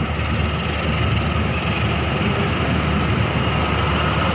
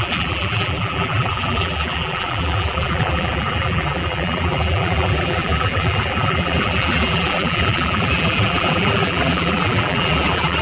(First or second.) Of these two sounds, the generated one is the second